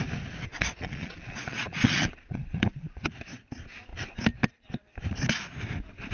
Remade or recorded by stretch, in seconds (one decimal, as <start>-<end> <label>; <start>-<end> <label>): 0.0-0.5 recorded; 0.5-3.1 remade; 3.1-6.1 recorded